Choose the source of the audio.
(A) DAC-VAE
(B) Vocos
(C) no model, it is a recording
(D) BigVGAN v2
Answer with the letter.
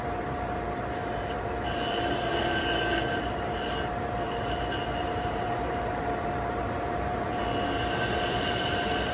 D